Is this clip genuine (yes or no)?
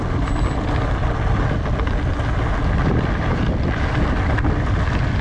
yes